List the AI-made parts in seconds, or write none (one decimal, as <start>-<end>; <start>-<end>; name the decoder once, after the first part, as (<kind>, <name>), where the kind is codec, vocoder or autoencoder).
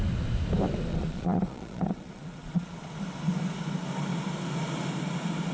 0.9-3.0 (vocoder, Vocos)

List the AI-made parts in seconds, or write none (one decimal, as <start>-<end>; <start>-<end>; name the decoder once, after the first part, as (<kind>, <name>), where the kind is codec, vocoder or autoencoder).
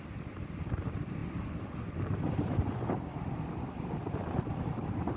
none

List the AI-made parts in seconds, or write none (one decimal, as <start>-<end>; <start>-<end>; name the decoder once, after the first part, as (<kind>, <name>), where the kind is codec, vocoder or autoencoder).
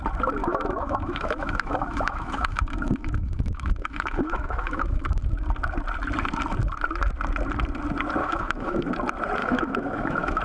0.4-5.2 (autoencoder, DAC-VAE); 8.2-8.9; 9.4-10.4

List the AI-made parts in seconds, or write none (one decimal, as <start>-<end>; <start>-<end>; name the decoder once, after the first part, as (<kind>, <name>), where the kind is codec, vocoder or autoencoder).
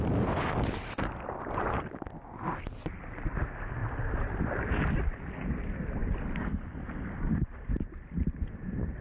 none